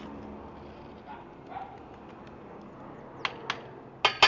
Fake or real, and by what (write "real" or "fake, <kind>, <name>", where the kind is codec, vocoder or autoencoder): real